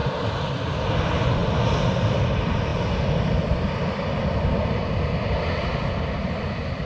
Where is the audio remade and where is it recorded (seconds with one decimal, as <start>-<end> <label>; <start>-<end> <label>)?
0.0-0.7 recorded; 0.7-6.9 remade